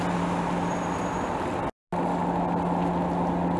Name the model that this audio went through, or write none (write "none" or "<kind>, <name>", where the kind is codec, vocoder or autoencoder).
none